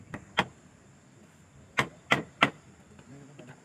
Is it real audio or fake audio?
fake